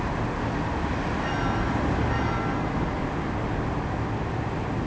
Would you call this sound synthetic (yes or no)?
no